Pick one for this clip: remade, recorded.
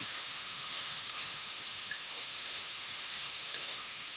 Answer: remade